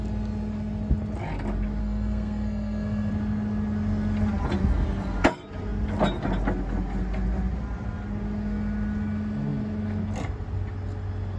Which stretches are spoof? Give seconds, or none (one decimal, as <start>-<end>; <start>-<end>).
1.8-3.1